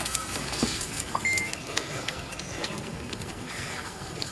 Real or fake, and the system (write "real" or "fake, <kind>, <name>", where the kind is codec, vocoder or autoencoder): fake, codec, SNAC